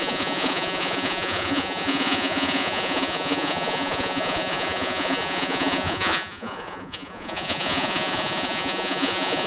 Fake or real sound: fake